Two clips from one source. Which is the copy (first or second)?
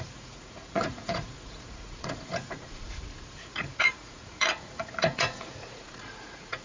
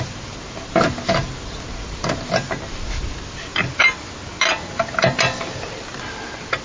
first